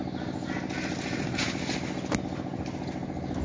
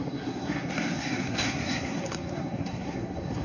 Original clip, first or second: first